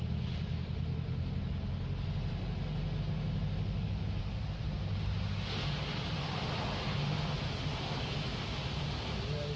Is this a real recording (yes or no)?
yes